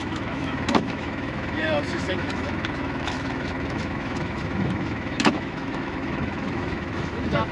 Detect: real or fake fake